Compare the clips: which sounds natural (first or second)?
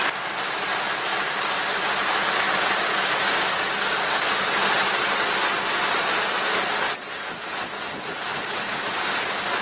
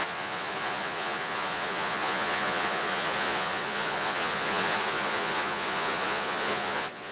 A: first